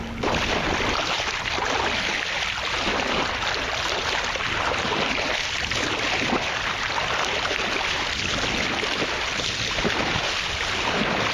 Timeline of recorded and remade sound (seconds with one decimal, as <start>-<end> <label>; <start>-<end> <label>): 0.0-11.3 recorded